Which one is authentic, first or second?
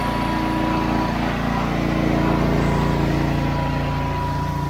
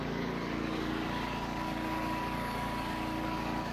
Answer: first